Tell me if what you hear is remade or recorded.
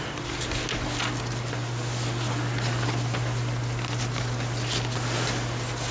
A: recorded